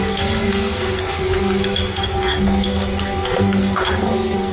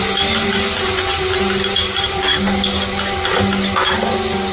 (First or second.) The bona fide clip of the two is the second